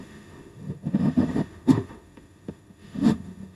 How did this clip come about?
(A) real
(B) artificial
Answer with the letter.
B